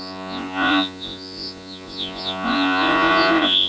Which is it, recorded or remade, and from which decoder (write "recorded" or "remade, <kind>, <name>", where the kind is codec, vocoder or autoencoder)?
remade, vocoder, Vocos